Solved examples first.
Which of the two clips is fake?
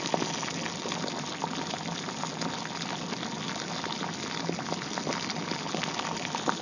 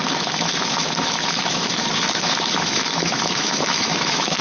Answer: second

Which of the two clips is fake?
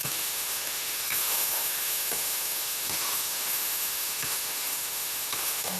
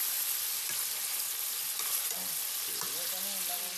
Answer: first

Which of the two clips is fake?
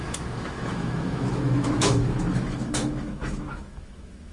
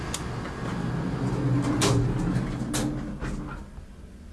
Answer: first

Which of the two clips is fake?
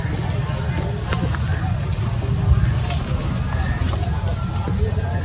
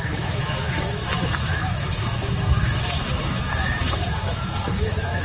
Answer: second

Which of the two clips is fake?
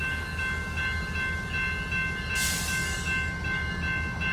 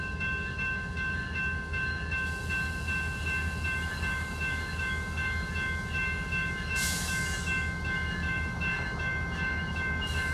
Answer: second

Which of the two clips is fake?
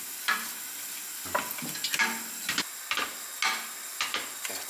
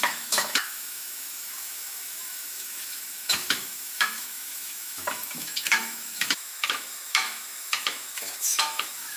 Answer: second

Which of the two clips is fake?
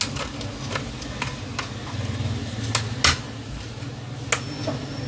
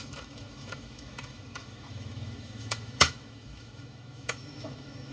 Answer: second